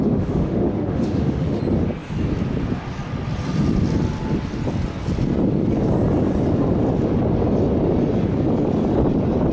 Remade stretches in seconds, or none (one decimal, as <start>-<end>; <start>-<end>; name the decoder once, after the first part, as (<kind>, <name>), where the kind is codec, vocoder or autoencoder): 0.0-1.6 (autoencoder, DAC-VAE)